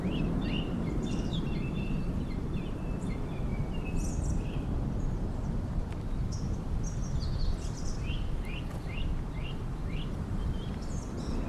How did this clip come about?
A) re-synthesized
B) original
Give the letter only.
A